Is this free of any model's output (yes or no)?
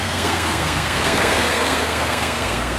no